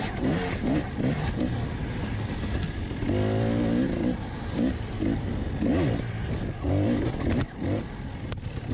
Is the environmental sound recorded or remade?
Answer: recorded